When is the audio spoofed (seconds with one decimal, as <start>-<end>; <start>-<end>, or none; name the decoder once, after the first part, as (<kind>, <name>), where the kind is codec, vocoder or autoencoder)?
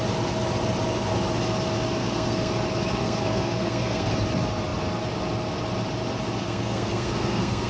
2.0-2.5 (codec, SNAC); 3.0-4.1; 6.4-7.7